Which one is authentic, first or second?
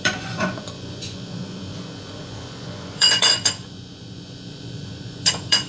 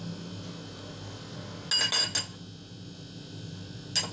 second